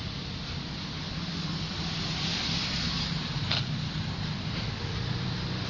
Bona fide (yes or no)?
no